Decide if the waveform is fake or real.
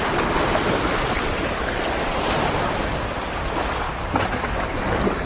fake